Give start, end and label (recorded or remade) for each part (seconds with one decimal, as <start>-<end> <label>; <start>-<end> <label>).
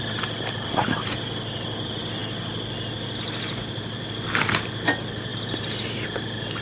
0.0-6.6 recorded